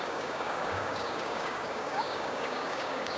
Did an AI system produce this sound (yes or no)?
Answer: yes